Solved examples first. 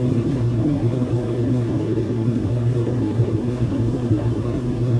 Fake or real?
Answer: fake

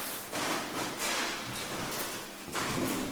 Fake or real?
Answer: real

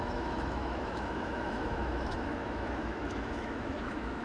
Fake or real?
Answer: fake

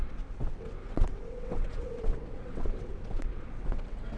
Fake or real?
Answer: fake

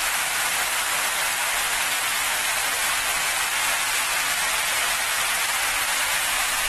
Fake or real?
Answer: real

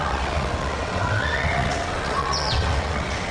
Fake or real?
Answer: fake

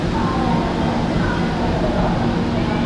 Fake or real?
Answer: real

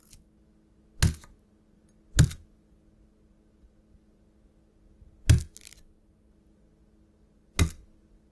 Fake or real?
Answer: real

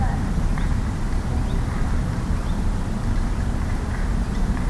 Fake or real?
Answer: real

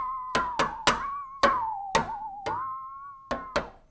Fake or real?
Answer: real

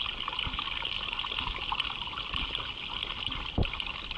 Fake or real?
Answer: real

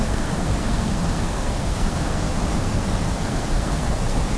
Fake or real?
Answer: fake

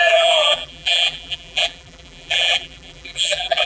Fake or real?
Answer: fake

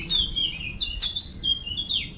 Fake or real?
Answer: real